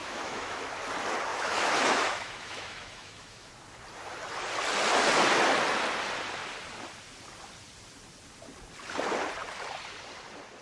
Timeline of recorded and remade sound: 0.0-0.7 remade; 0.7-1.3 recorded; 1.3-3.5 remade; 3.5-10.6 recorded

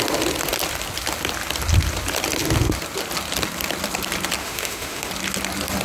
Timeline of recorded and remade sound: 0.0-4.4 recorded; 4.4-5.1 remade; 5.1-5.8 recorded

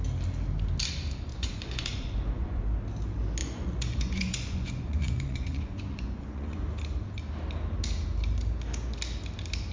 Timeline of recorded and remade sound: 0.0-1.3 recorded; 1.3-2.6 remade; 2.6-3.4 recorded; 3.4-6.6 remade; 6.6-9.7 recorded

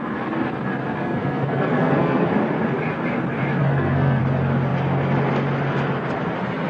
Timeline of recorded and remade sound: 0.0-1.0 recorded; 1.0-2.3 remade; 2.3-3.6 recorded; 3.6-4.2 remade; 4.2-6.7 recorded

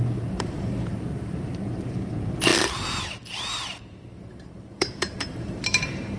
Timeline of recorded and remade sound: 0.0-2.5 remade; 2.5-3.8 recorded; 3.8-6.2 remade

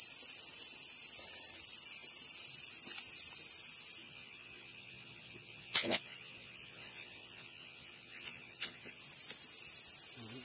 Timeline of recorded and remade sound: 0.0-4.0 recorded; 4.0-9.0 remade; 9.0-10.4 recorded

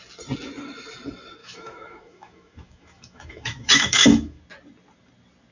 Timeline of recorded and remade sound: 0.0-1.4 recorded; 1.4-4.4 remade; 4.4-5.5 recorded